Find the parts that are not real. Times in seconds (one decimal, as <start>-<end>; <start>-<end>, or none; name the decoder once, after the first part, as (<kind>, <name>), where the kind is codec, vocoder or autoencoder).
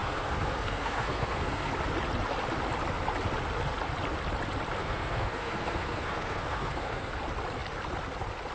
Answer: 0.0-1.7 (codec, SNAC); 4.8-7.1